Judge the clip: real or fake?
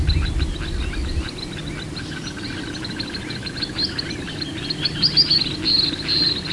real